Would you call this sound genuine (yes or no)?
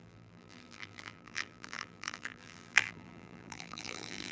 no